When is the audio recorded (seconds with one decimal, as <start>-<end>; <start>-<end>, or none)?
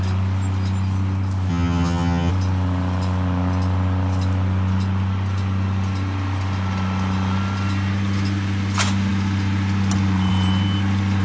0.0-1.5; 2.3-11.2